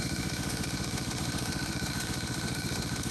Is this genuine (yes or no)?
no